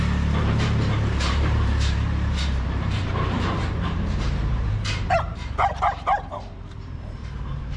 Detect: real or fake fake